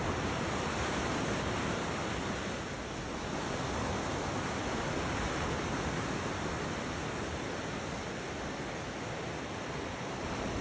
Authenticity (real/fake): real